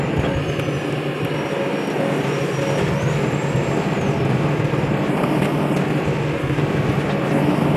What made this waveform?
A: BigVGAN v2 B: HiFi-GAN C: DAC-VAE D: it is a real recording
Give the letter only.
D